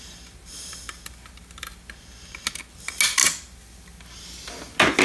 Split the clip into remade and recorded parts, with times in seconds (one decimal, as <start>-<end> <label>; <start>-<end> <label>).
0.0-5.0 recorded